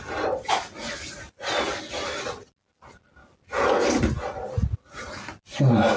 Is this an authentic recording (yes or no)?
yes